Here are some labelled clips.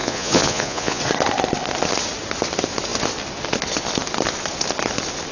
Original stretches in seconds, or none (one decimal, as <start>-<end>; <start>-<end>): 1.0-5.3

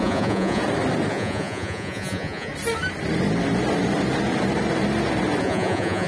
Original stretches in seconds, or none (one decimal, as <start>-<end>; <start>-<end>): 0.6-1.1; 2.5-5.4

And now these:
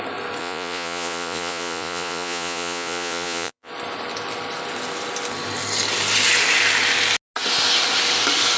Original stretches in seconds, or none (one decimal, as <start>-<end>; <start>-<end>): 0.0-0.4; 3.7-8.6

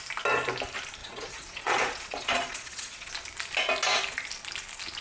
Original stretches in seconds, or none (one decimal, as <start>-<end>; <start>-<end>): 0.0-1.0; 3.1-5.0

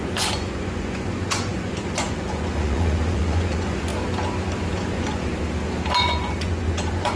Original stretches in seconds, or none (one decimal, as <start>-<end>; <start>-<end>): 3.9-4.7; 5.3-6.0